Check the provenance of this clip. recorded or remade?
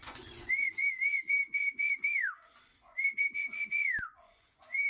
remade